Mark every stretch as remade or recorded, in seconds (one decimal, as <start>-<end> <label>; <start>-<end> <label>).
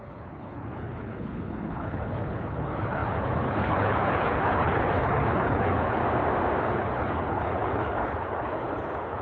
0.0-6.0 remade; 6.0-6.6 recorded; 6.6-9.2 remade